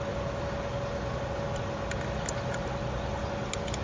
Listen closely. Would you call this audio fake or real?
real